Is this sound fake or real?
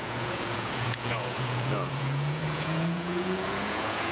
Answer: fake